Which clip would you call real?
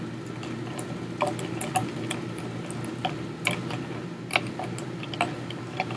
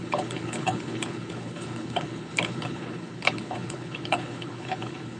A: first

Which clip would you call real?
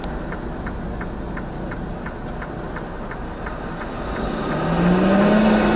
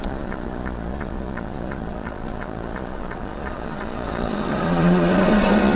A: first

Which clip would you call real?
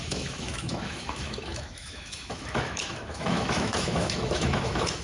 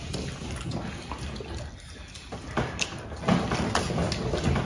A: second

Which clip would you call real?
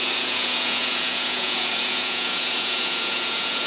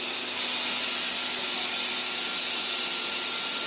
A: second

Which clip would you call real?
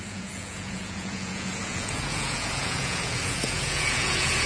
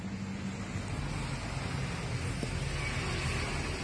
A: second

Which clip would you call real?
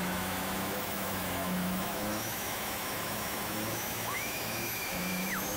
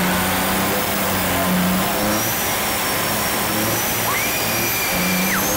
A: second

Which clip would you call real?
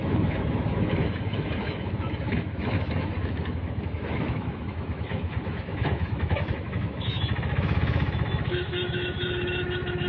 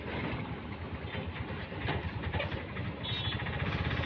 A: second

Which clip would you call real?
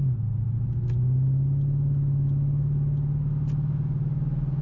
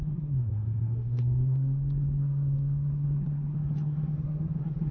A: first